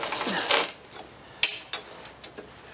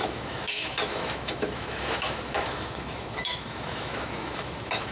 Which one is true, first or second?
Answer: first